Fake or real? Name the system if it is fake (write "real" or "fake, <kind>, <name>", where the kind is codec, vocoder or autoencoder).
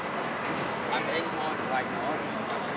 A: real